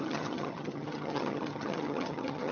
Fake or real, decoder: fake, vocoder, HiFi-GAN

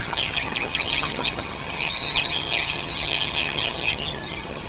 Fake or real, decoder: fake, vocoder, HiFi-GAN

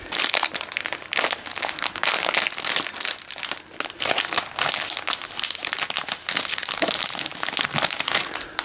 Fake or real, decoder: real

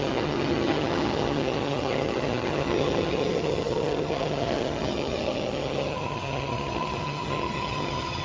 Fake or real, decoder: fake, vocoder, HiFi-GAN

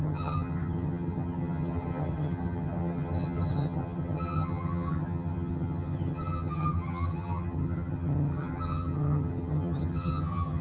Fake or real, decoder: fake, vocoder, HiFi-GAN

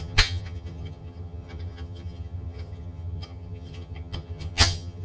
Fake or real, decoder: fake, vocoder, HiFi-GAN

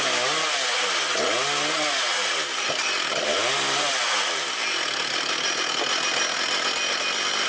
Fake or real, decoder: real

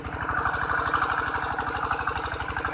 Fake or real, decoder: real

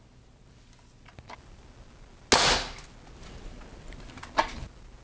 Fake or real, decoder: real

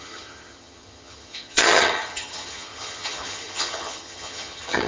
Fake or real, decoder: fake, vocoder, HiFi-GAN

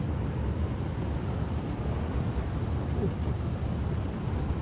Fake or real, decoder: real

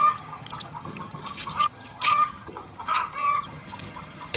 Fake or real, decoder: fake, vocoder, HiFi-GAN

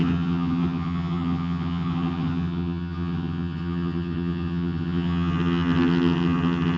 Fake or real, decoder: fake, vocoder, HiFi-GAN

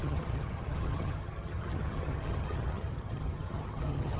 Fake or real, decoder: fake, vocoder, HiFi-GAN